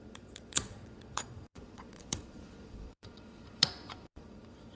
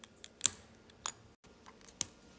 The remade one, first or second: first